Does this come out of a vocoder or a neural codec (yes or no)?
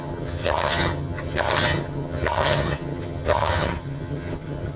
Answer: yes